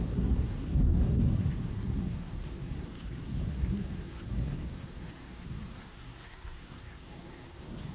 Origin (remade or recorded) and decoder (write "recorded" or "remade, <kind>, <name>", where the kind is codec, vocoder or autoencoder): remade, codec, SNAC